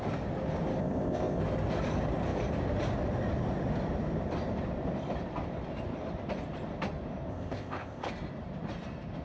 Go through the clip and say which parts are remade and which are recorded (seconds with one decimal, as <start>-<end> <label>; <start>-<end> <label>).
0.0-0.8 recorded; 0.8-1.4 remade; 1.4-7.3 recorded; 7.3-8.1 remade; 8.1-9.2 recorded